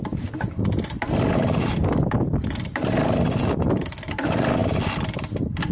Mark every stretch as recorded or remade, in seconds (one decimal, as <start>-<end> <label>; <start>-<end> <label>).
0.0-1.8 recorded; 1.8-3.2 remade; 3.2-5.7 recorded